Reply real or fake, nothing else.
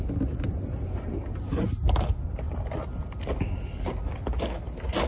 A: real